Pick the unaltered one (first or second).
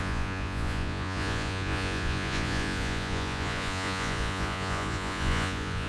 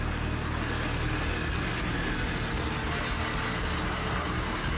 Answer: second